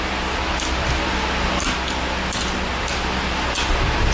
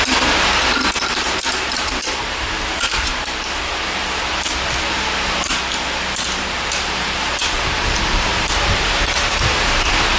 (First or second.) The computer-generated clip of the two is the second